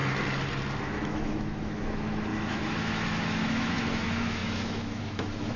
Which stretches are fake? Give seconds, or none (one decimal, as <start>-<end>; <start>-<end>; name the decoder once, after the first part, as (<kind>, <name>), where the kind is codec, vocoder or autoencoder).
0.8-5.6 (autoencoder, DAC-VAE)